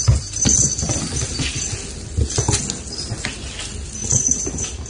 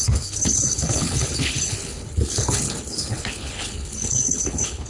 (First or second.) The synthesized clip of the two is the second